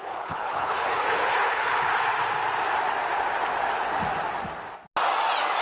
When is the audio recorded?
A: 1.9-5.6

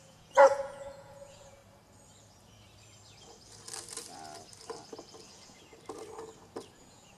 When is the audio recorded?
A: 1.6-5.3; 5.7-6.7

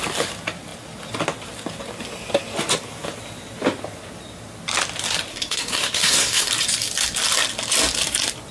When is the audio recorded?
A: 0.0-5.3; 6.5-8.5

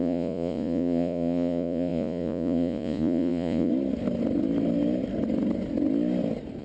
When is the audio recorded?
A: 3.7-6.6